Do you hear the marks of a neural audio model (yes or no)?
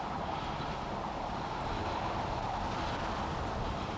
no